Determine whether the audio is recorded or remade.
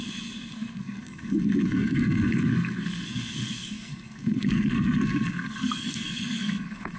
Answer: remade